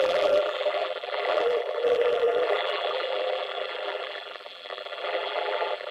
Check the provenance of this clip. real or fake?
fake